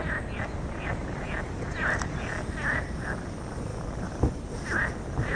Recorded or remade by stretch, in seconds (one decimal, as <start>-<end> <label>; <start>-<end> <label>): 0.0-5.4 recorded